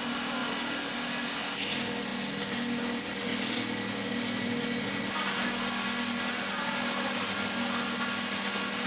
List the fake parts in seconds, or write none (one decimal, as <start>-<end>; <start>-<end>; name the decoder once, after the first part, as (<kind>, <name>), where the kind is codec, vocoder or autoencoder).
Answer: none